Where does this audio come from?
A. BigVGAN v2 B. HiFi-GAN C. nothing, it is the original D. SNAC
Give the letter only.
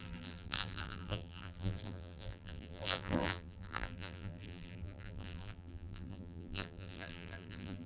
A